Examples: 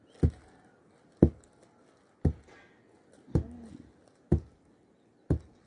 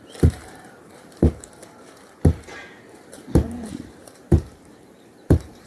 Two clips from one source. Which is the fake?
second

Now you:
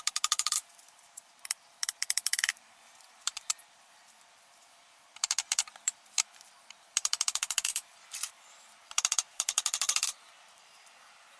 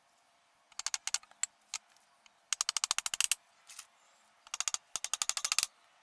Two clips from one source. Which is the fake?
first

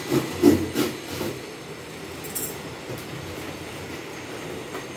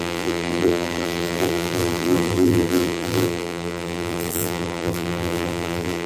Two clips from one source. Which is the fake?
second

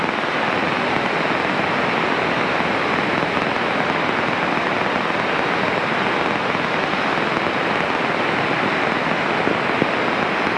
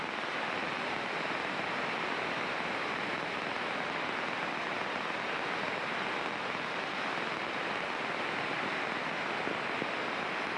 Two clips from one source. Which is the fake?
second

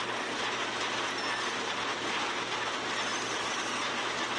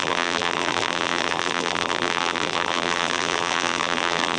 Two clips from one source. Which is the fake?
second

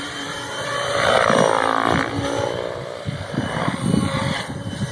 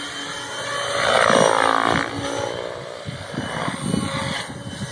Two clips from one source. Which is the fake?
first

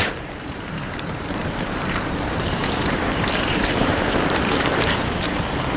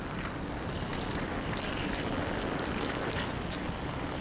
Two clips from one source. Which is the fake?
first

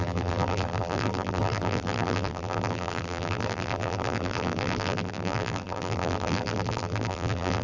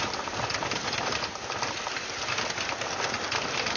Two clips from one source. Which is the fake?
first